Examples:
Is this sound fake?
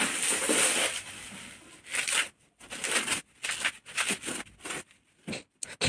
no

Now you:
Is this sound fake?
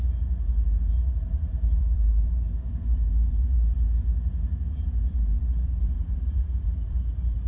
yes